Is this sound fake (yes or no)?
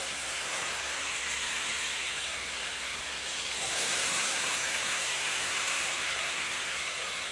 yes